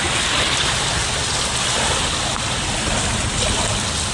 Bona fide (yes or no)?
yes